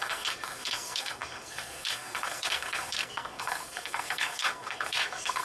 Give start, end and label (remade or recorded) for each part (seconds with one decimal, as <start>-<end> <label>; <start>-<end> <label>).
0.0-5.4 remade